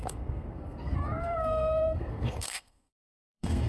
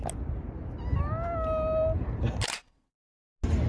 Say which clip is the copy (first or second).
first